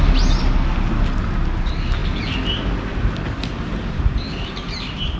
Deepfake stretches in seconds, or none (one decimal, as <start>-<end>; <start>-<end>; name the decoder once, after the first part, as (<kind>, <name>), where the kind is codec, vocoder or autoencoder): none